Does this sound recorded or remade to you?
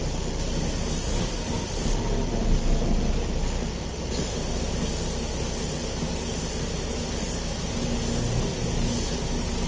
recorded